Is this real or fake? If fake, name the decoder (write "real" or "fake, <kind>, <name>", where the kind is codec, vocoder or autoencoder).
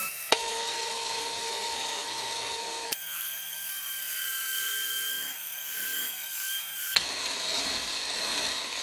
fake, codec, SNAC